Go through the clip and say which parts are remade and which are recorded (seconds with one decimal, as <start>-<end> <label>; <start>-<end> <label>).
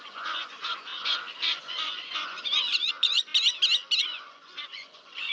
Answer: 0.0-3.3 remade; 3.3-4.0 recorded; 4.0-5.3 remade